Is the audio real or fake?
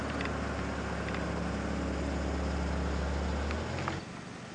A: real